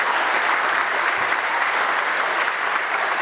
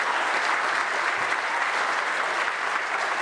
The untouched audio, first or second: second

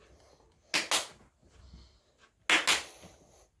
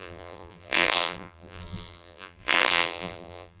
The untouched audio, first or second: first